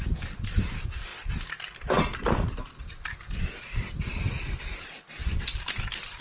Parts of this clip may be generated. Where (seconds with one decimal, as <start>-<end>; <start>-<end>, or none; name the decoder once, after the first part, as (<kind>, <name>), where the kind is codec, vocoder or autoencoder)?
0.0-1.1 (vocoder, BigVGAN v2); 4.8-6.2